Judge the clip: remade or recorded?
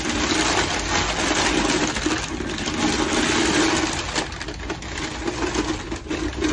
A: recorded